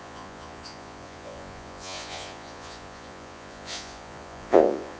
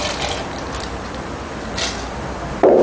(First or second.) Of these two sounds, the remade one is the first